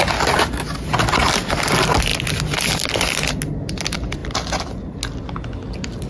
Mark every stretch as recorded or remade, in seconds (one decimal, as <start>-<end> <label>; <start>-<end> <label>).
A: 0.0-6.1 recorded